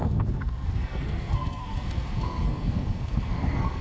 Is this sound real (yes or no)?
no